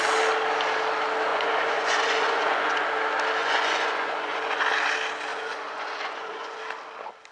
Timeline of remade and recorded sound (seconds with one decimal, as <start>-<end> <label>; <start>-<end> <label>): 0.0-1.3 recorded; 1.3-2.9 remade; 2.9-3.4 recorded; 3.4-4.6 remade; 4.6-5.3 recorded; 5.3-6.6 remade; 6.6-7.3 recorded